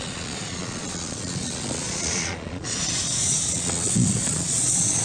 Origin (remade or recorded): remade